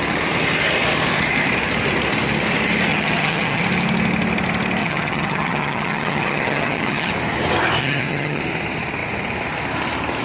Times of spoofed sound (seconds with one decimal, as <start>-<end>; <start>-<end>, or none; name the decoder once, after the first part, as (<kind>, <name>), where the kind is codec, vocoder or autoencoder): 2.9-3.6 (vocoder, HiFi-GAN); 4.8-7.1; 7.8-8.4